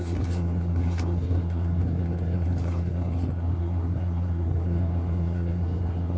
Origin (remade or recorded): remade